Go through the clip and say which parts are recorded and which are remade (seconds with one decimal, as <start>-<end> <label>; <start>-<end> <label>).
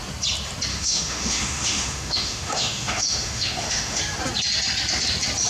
0.0-0.7 recorded; 0.7-4.0 remade; 4.0-5.5 recorded